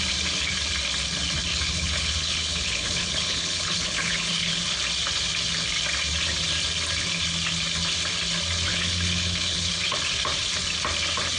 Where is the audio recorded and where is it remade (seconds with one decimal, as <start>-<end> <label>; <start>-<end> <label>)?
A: 0.0-1.5 recorded; 1.5-4.6 remade; 4.6-8.7 recorded; 8.7-9.7 remade; 9.7-11.4 recorded

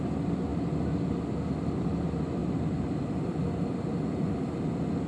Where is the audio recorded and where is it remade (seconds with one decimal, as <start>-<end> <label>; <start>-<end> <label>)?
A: 0.0-5.1 recorded

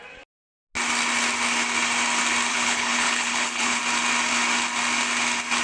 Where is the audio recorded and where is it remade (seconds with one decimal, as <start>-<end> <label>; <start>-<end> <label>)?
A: 0.0-2.5 recorded; 2.5-3.8 remade; 3.8-5.6 recorded

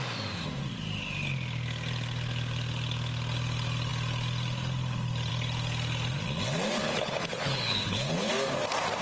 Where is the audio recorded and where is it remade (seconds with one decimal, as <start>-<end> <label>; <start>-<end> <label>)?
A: 0.0-6.8 recorded; 6.8-8.3 remade; 8.3-9.0 recorded

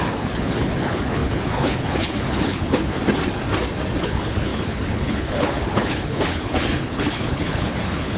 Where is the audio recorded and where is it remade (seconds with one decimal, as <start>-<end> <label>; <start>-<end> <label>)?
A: 0.0-3.0 remade; 3.0-4.0 recorded; 4.0-8.2 remade

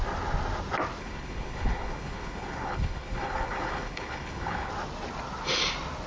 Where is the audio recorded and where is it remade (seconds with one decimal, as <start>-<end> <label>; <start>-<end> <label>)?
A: 0.0-1.0 recorded; 1.0-4.7 remade; 4.7-6.1 recorded

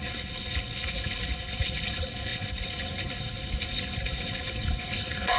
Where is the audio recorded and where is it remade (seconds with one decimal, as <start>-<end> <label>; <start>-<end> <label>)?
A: 0.0-5.4 remade